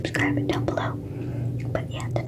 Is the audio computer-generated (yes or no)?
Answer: no